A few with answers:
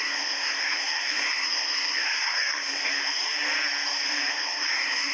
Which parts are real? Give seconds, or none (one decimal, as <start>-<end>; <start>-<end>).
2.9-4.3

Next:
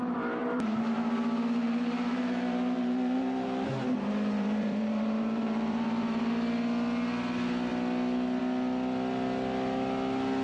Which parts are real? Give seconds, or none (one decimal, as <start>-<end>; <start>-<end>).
0.0-0.4; 1.1-1.6; 6.3-10.4

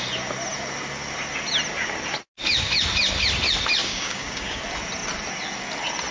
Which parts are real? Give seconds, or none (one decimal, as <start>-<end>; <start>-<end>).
0.0-3.8; 4.6-6.1

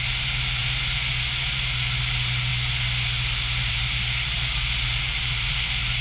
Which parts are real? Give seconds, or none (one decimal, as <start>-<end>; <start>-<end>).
0.0-6.0

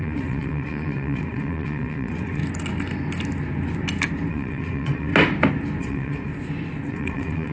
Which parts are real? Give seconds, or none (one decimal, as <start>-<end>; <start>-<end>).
2.4-4.3; 5.1-5.8; 6.3-6.9

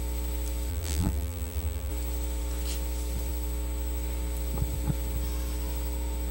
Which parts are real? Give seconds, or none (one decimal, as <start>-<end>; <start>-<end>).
0.0-0.7; 1.9-6.3

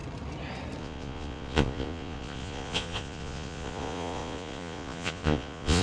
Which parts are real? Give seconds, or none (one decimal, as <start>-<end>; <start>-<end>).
0.0-0.8